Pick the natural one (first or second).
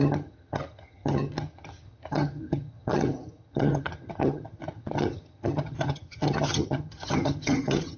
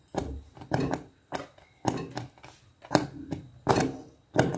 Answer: second